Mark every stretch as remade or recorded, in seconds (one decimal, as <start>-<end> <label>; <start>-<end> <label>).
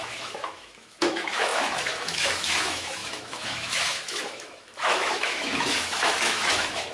0.0-6.9 remade